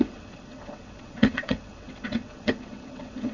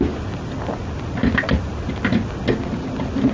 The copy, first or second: first